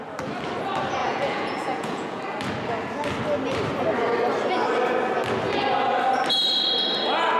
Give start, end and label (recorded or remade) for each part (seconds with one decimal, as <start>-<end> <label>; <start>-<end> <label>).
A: 0.0-1.0 recorded; 1.0-2.2 remade; 2.2-7.4 recorded